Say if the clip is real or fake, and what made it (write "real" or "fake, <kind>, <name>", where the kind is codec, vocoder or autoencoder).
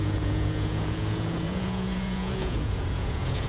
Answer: fake, vocoder, Vocos